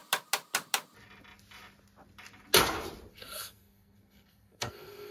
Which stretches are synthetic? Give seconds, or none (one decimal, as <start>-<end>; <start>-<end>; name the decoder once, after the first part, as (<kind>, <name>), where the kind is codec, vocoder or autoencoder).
3.1-5.1 (codec, SNAC)